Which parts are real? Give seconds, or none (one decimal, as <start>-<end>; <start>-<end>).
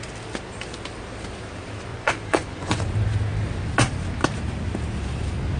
0.0-1.9; 2.8-5.6